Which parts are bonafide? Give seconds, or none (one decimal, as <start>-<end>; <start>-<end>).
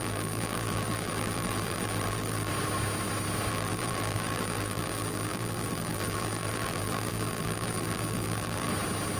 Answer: 2.5-3.5; 8.7-9.2